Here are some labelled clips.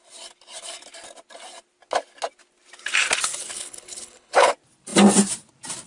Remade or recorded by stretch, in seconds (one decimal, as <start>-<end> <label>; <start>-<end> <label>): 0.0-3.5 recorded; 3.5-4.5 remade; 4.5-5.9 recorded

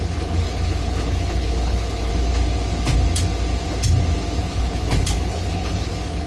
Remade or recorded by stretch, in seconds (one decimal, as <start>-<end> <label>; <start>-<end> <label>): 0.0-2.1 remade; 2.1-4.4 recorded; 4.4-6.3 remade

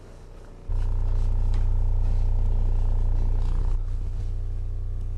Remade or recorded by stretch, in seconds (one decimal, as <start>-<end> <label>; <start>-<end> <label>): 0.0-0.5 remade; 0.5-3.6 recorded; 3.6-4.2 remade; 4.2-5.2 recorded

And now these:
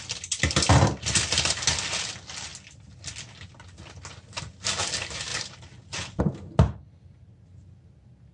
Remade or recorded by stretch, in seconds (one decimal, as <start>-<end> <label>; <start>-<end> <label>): 0.0-8.3 recorded